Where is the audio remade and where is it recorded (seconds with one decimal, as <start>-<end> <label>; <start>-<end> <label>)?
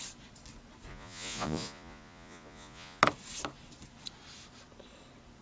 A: 0.0-0.9 recorded; 0.9-3.0 remade; 3.0-5.4 recorded